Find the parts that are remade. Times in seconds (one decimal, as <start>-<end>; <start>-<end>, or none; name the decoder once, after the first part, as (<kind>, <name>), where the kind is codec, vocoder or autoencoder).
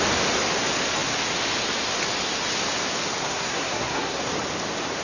3.2-4.2 (codec, SNAC)